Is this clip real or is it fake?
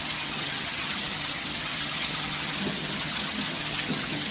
fake